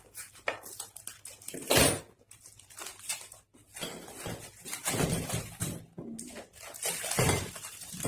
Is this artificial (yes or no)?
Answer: no